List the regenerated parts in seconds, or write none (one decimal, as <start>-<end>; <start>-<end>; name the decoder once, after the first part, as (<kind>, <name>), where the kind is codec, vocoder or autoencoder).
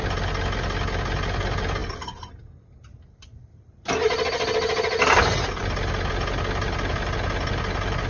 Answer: none